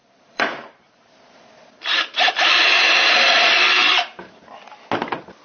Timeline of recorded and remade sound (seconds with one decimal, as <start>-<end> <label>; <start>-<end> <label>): 0.0-2.3 remade; 2.3-3.8 recorded; 3.8-4.3 remade; 4.3-5.4 recorded